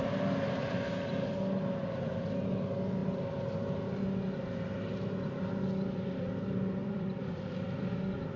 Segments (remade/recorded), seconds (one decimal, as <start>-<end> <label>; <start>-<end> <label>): 0.0-0.6 recorded; 0.6-1.3 remade; 1.3-6.8 recorded; 6.8-8.0 remade; 8.0-8.4 recorded